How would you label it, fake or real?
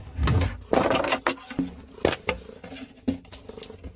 real